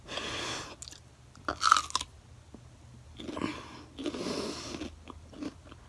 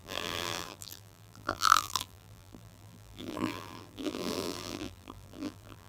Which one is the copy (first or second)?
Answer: second